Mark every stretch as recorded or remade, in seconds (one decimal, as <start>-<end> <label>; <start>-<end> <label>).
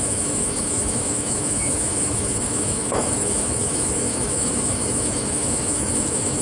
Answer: 0.0-6.4 remade